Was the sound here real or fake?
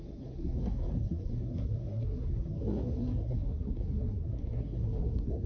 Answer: fake